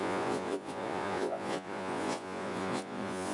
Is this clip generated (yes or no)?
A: yes